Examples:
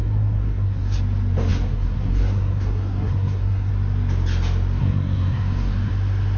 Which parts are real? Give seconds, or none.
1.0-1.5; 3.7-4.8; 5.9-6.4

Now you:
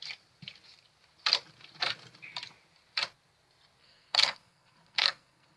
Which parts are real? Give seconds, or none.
0.0-3.8

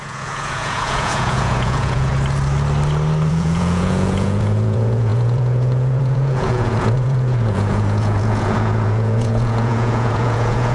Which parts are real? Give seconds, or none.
2.1-3.3